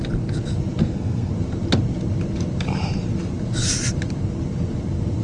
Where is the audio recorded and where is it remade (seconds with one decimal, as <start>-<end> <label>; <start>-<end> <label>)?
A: 0.0-0.8 recorded; 0.8-1.3 remade; 1.3-5.2 recorded